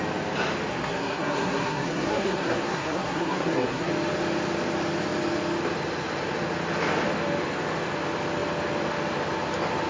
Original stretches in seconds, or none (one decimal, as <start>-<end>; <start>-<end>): 0.0-0.7; 3.9-9.9